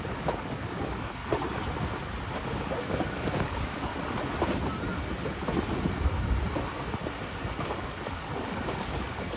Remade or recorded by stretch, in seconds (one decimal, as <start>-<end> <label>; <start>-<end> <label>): 0.0-1.2 remade; 1.2-2.8 recorded; 2.8-3.9 remade; 3.9-7.4 recorded; 7.4-9.4 remade